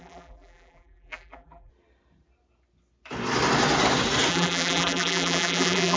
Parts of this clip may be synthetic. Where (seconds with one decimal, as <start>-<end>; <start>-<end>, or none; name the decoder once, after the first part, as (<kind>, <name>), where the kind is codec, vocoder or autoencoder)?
0.0-1.7 (vocoder, BigVGAN v2); 4.3-6.0